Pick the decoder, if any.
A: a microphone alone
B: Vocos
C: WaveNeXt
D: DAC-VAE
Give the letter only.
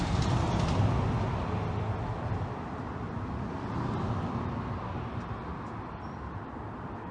A